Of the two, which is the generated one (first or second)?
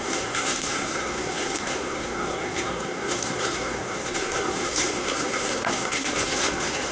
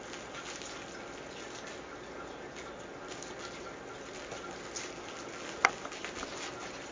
first